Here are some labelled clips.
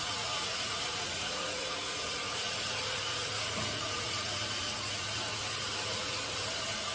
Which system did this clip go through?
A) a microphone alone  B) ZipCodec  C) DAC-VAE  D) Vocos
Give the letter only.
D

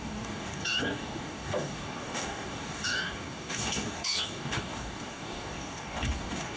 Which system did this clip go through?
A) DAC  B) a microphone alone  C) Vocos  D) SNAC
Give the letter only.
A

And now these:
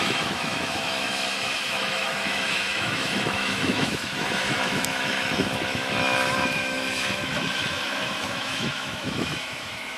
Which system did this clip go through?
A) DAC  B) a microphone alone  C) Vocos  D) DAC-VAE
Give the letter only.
D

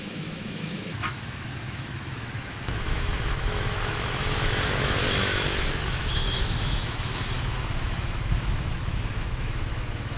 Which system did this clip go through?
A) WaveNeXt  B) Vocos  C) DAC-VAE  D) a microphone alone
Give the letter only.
C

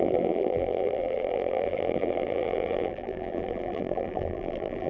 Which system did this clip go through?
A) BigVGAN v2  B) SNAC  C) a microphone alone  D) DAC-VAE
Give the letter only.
A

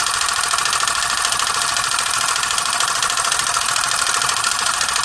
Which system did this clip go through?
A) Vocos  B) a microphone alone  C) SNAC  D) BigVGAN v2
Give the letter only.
B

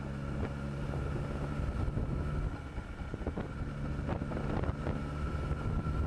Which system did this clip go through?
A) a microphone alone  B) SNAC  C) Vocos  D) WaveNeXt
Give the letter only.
A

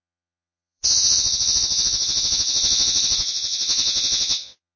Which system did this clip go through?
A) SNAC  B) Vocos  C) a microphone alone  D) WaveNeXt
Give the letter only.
B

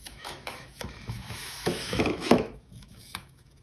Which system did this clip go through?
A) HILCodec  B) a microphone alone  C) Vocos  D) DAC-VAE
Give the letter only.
D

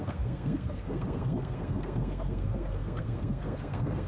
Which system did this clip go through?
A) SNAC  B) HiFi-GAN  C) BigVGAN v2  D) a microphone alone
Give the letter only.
A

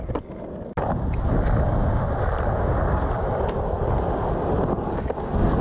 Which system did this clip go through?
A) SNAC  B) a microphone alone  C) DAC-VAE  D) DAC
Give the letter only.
B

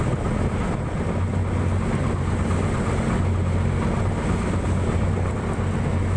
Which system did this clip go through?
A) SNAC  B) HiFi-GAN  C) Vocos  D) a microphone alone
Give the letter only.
D